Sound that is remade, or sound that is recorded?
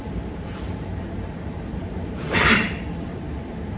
remade